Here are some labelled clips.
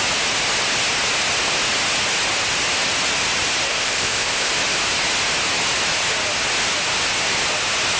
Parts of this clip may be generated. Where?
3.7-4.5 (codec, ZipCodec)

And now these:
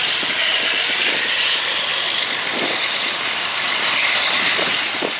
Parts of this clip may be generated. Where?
0.0-1.3 (vocoder, BigVGAN v2)

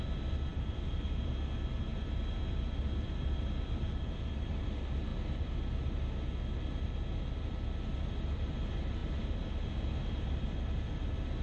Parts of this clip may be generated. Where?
0.5-1.3 (vocoder, BigVGAN v2); 1.9-4.5

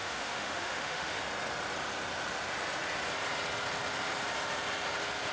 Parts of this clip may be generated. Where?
0.0-1.2 (autoencoder, DAC-VAE)